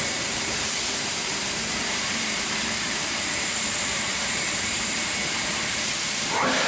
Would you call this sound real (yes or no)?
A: no